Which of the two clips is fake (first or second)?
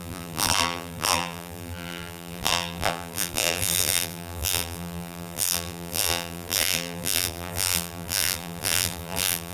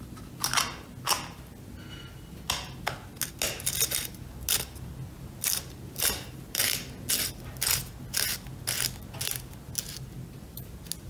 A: first